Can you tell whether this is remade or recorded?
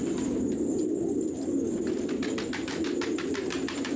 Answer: recorded